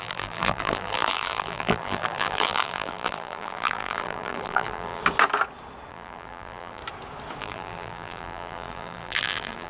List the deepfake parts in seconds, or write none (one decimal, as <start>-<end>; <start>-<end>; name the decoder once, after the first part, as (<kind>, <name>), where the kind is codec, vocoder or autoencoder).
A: 0.0-5.0 (vocoder, BigVGAN v2); 5.9-6.8; 7.4-9.7